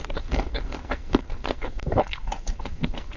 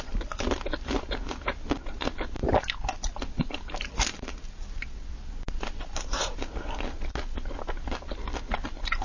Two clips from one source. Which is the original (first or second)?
second